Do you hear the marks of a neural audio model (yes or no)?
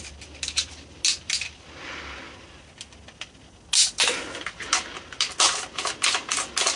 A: no